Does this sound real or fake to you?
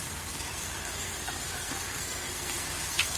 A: fake